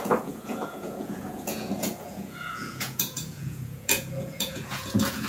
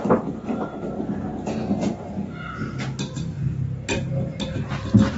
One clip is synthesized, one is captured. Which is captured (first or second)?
second